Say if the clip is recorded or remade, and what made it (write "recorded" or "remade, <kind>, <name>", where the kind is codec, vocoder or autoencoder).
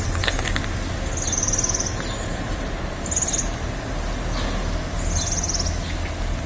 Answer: recorded